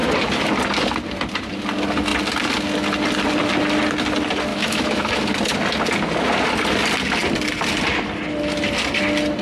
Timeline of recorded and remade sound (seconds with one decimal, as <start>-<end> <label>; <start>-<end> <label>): 0.0-4.5 recorded; 4.5-5.1 remade; 5.1-9.4 recorded